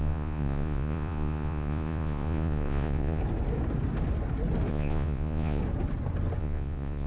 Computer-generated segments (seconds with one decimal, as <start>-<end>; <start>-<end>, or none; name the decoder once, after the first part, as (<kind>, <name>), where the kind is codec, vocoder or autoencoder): 0.0-3.2 (vocoder, Vocos); 4.7-5.6; 6.4-7.1